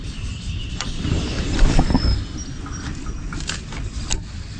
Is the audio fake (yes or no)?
no